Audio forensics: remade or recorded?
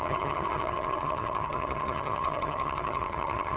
remade